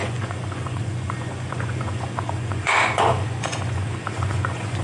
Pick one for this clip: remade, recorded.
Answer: remade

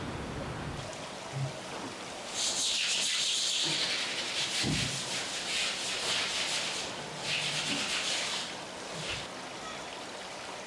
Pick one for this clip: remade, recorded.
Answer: recorded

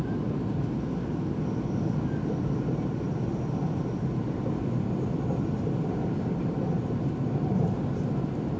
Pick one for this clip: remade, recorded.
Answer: recorded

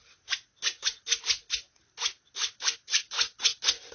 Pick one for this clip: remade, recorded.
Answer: recorded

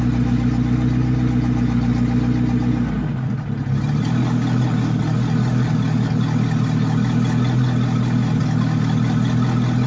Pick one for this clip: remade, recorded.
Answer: recorded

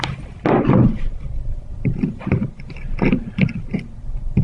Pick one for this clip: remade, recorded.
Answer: recorded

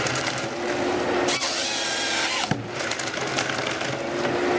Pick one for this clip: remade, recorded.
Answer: recorded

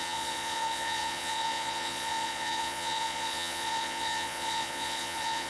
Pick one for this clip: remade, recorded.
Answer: remade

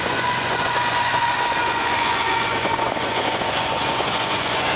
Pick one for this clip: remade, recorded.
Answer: remade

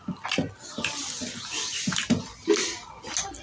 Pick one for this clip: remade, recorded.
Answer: recorded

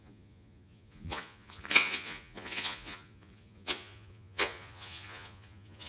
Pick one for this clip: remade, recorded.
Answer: remade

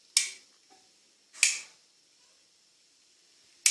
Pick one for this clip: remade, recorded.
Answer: recorded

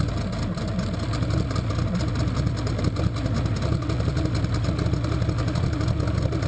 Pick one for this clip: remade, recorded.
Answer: recorded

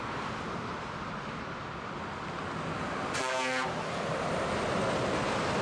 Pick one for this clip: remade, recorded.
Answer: recorded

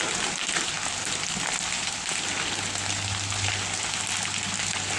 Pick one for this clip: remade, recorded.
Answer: recorded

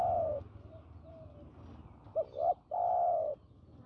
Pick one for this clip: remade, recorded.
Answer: recorded